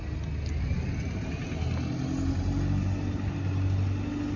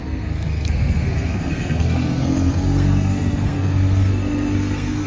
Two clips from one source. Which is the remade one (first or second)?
second